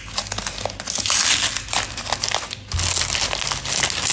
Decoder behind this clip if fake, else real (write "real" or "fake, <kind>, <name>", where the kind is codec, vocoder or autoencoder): real